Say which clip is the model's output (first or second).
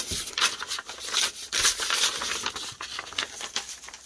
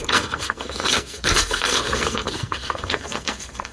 second